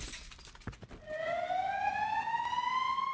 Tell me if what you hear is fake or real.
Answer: real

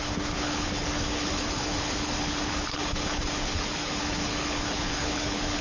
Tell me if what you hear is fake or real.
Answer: fake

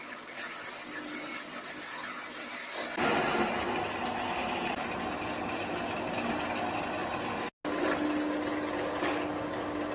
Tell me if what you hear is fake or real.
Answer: real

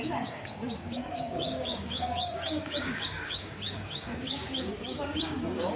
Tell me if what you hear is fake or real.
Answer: fake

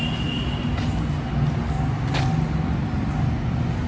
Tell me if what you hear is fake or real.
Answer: real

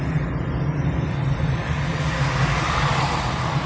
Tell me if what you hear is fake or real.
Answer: real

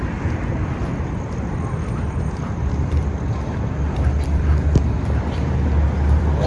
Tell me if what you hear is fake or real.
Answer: fake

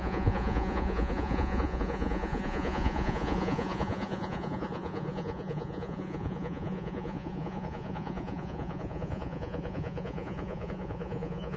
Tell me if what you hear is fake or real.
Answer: fake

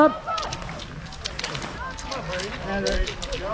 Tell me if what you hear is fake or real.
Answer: real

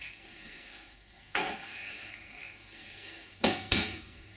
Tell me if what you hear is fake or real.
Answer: fake